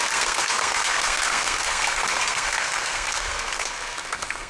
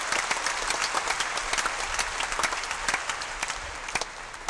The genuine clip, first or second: second